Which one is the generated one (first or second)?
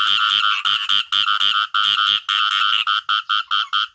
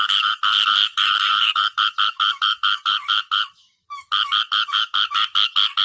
second